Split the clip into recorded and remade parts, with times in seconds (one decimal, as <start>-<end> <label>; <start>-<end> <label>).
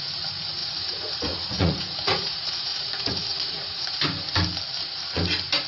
0.0-0.6 recorded; 0.6-4.0 remade; 4.0-5.7 recorded